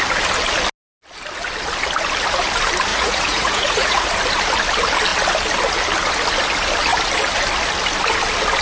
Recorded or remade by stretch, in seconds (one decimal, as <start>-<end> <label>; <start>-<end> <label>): 0.0-2.9 recorded; 2.9-4.0 remade; 4.0-8.6 recorded